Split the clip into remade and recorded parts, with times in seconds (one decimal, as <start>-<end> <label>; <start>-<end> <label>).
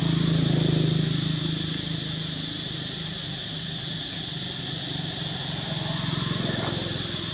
0.0-7.3 recorded